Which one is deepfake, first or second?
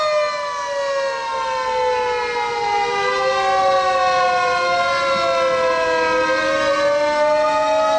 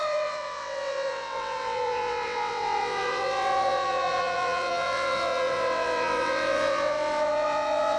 second